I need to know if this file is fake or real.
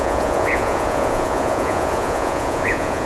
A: fake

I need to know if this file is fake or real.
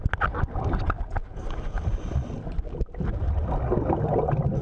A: real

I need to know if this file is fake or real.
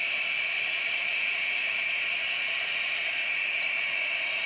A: fake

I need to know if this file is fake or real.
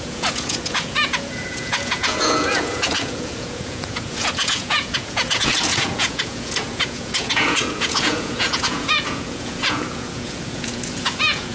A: fake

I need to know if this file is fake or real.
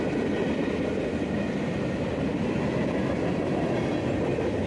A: real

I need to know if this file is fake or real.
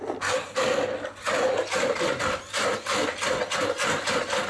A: real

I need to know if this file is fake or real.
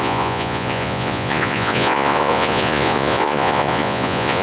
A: fake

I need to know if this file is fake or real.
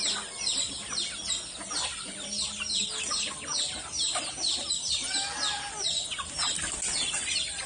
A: real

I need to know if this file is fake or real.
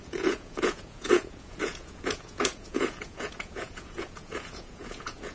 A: fake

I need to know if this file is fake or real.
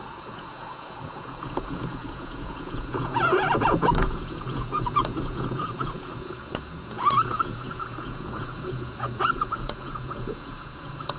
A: fake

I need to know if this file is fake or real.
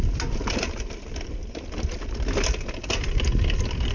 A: real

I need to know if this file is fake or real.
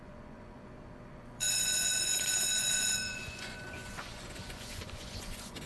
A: fake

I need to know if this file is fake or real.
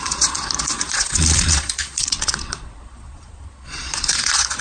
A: fake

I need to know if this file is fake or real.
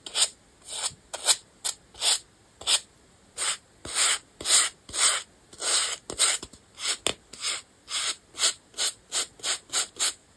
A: real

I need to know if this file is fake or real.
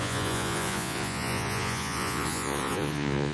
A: fake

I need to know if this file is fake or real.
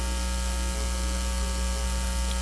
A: real